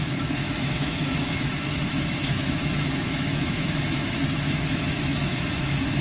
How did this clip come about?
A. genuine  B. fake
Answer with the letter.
B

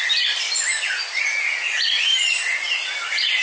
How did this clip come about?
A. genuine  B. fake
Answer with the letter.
A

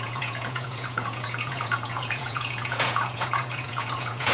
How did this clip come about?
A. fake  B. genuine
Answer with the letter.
A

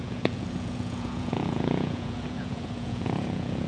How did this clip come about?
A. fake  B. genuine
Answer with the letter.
A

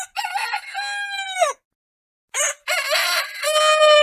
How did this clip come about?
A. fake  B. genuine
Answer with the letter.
B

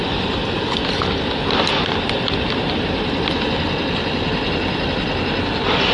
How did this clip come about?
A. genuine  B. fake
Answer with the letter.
A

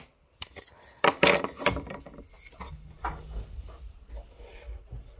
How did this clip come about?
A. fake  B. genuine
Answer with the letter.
B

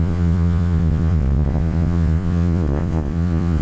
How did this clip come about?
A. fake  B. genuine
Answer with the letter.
A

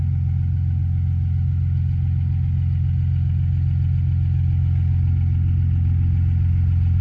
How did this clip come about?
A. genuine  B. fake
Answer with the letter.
A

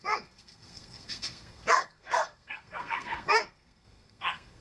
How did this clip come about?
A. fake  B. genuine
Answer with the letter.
A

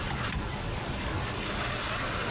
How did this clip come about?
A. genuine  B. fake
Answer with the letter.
A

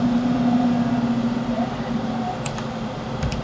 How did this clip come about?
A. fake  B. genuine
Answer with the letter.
A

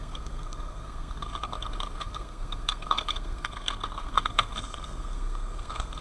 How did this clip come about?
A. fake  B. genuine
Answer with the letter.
A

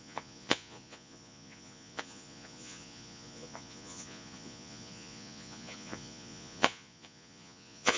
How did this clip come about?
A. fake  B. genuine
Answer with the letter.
A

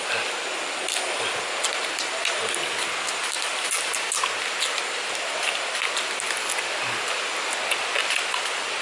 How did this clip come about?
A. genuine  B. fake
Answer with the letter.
A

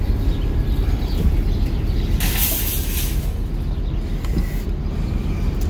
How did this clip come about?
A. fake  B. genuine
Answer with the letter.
B